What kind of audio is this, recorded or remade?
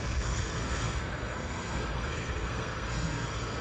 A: remade